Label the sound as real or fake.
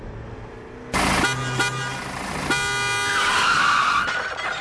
real